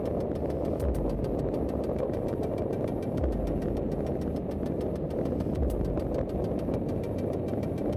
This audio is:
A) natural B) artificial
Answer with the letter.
A